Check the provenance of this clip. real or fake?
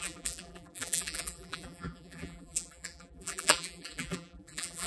fake